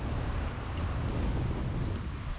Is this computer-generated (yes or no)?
no